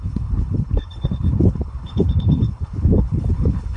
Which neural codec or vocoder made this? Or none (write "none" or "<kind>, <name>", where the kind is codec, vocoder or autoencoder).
codec, HILCodec